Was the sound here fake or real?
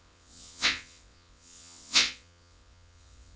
fake